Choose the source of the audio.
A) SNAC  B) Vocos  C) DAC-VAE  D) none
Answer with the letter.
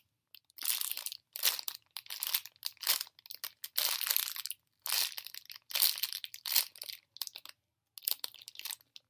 D